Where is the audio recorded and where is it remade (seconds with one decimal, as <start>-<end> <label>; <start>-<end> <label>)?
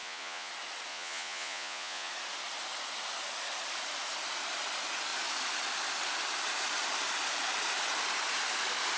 0.0-0.5 remade; 0.5-0.9 recorded; 0.9-2.1 remade; 2.1-9.0 recorded